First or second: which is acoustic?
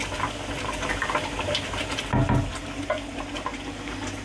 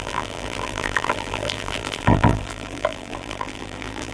first